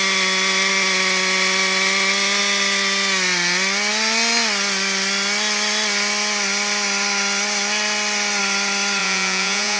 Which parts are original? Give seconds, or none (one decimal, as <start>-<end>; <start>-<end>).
0.0-9.0